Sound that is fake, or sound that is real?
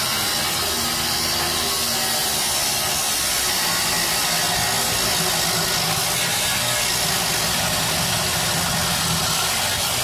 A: real